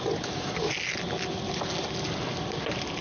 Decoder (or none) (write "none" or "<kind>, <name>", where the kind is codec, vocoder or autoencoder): none